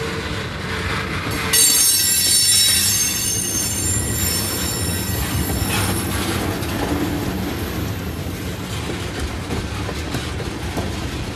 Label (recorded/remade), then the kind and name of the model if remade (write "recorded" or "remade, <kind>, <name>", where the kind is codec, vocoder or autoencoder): recorded